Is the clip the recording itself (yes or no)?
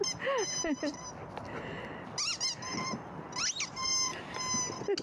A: yes